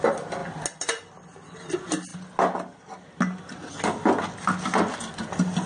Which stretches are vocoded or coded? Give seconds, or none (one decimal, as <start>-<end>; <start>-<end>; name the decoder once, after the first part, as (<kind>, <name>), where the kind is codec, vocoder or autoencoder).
none